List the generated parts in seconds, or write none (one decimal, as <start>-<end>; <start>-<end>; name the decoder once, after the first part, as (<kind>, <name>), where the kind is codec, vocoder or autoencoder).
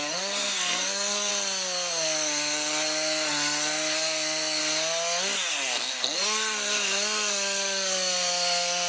0.0-1.3 (codec, SNAC); 1.9-4.6; 5.5-8.9